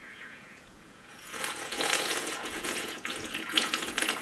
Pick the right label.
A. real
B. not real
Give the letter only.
B